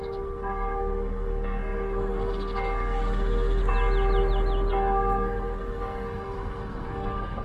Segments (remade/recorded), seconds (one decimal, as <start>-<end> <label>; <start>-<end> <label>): 0.0-3.6 remade; 3.6-4.7 recorded; 4.7-7.4 remade